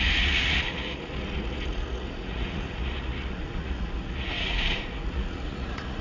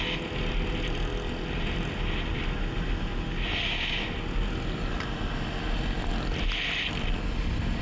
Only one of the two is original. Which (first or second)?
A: second